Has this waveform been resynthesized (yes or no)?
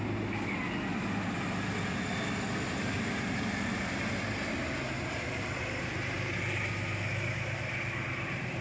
no